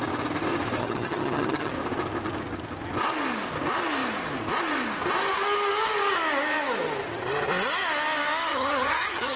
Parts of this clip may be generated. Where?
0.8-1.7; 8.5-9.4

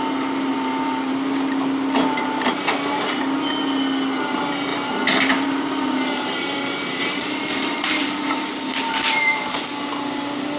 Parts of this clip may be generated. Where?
0.5-1.1; 4.7-9.6

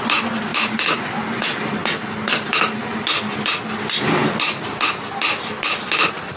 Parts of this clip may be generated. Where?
none

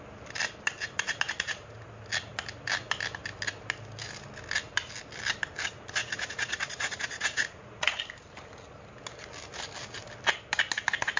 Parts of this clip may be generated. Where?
0.8-1.8; 6.0-8.0

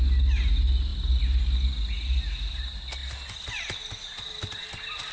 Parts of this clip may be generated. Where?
none